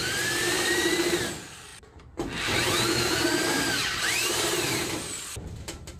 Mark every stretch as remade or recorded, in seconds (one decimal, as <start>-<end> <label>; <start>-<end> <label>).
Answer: 0.0-1.7 remade; 1.7-2.9 recorded; 2.9-6.0 remade